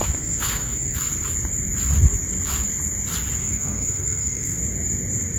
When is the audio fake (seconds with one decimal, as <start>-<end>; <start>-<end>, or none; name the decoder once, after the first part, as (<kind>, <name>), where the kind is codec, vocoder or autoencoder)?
0.0-1.0 (codec, SNAC); 3.4-4.6